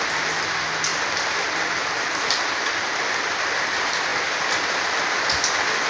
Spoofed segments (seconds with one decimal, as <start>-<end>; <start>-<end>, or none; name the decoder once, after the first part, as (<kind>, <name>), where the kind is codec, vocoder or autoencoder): none